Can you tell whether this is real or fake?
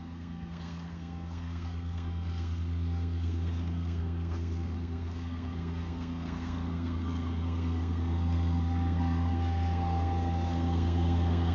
fake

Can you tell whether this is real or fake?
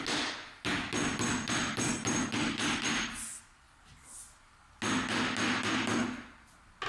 real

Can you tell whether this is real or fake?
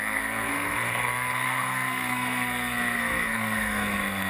fake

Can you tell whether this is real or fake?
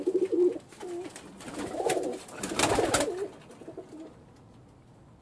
real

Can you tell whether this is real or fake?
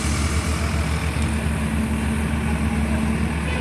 real